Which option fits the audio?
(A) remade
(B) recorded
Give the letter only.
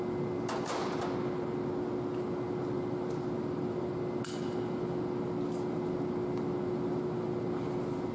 B